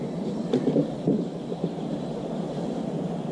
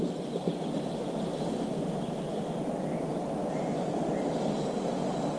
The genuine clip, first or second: second